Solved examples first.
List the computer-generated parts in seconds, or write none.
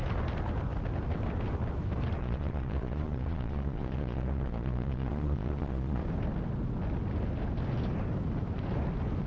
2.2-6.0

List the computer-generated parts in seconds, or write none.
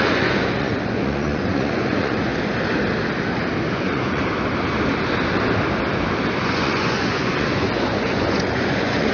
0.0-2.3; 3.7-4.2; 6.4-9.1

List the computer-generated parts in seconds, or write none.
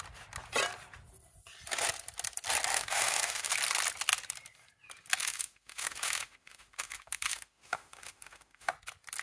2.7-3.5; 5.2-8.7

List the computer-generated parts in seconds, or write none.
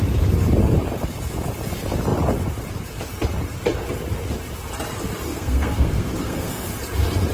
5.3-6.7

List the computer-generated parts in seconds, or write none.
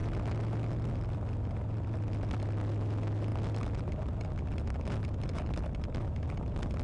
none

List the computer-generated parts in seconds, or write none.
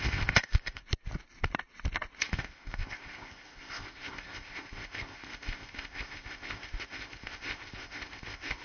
0.0-0.8; 2.2-8.6